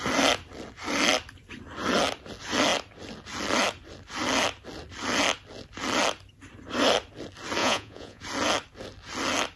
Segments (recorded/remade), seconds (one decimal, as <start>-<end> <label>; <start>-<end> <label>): 0.0-7.6 recorded; 7.6-8.2 remade; 8.2-9.6 recorded